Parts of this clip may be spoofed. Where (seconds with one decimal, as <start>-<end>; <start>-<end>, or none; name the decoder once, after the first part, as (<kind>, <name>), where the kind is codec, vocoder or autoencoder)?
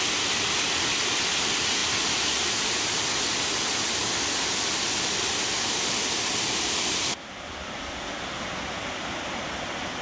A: none